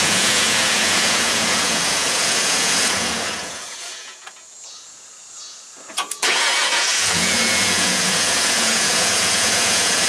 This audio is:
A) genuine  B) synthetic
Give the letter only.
B